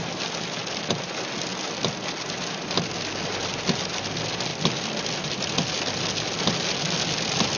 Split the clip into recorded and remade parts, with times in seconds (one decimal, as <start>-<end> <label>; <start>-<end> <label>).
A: 0.0-7.6 recorded